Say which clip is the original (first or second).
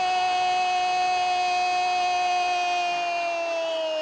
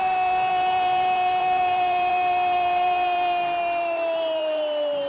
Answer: first